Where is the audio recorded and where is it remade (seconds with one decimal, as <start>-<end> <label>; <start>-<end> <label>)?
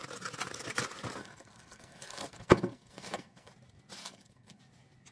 0.0-1.2 recorded; 1.2-3.5 remade; 3.5-4.0 recorded; 4.0-4.6 remade; 4.6-5.1 recorded